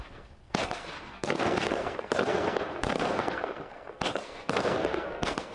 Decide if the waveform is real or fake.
fake